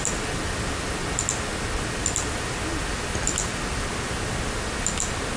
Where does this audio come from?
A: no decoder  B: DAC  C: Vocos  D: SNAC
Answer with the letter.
A